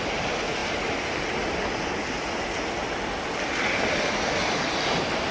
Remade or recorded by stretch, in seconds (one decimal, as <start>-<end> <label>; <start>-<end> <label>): 0.0-5.3 recorded